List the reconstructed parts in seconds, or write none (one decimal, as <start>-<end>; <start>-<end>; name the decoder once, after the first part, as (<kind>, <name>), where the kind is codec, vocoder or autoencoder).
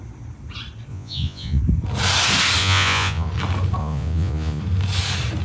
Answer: 0.9-1.6 (vocoder, Vocos); 2.6-3.3; 3.8-4.6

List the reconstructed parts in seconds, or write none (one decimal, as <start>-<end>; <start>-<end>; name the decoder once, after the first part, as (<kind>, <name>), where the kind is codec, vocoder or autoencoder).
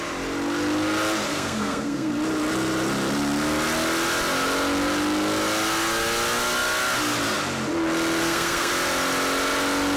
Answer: 1.3-2.1 (codec, SNAC); 8.2-8.7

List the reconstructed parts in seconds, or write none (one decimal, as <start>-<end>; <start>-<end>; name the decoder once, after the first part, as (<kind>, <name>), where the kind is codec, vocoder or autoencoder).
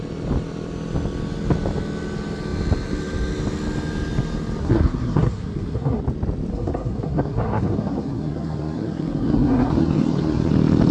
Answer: 4.6-6.0 (codec, SNAC); 6.5-10.5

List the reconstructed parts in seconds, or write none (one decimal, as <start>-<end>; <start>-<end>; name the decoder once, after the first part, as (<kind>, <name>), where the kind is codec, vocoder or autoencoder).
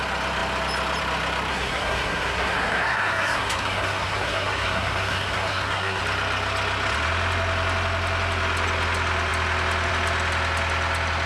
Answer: 1.5-6.0 (codec, SNAC)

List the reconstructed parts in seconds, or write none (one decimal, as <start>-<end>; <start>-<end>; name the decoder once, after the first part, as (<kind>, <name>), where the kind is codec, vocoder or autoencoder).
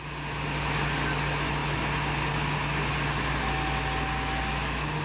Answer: none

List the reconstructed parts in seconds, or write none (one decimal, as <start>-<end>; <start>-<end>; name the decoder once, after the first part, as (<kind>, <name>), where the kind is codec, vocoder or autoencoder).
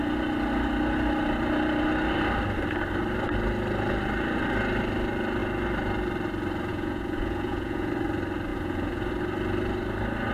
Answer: 6.7-7.9 (vocoder, Vocos); 8.5-9.1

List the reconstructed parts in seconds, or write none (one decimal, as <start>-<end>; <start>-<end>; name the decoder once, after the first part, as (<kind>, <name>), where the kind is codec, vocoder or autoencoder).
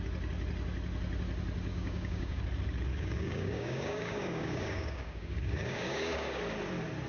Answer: 1.7-2.4 (codec, DAC); 2.9-6.4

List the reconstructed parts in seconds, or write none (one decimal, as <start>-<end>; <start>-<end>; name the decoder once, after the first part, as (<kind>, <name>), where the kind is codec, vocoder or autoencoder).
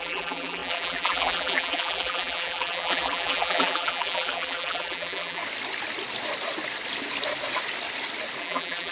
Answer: 0.0-5.4 (vocoder, BigVGAN v2); 8.4-8.9